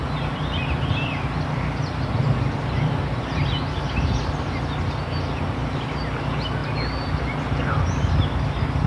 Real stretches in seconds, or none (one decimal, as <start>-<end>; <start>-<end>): 0.0-8.9